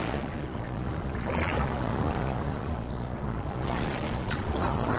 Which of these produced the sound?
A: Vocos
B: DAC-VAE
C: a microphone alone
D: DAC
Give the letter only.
A